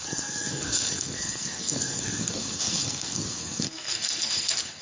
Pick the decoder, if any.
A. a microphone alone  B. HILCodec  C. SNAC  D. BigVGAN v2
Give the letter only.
C